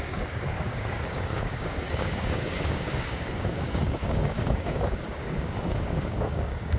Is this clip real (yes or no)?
no